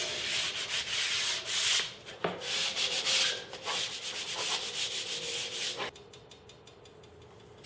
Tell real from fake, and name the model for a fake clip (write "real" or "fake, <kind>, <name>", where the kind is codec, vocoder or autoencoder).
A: real